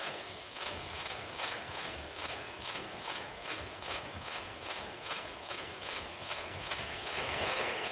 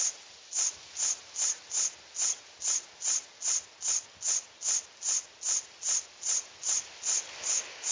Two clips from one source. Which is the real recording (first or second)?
second